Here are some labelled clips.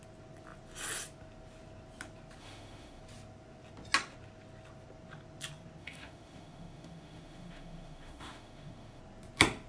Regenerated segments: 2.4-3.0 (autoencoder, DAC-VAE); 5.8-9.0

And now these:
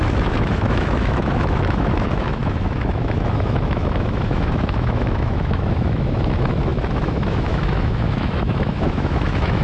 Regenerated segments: 0.0-9.6 (autoencoder, DAC-VAE)

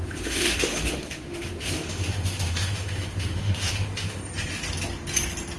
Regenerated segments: 0.0-4.2 (autoencoder, DAC-VAE)

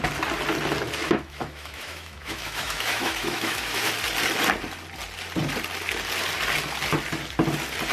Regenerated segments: 1.0-3.9 (autoencoder, DAC-VAE)

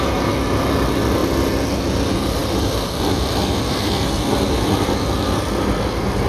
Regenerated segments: none